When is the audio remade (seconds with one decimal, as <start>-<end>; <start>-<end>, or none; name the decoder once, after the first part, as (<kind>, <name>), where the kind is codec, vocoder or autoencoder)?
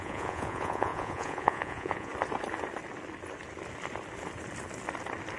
0.0-2.1 (vocoder, Vocos)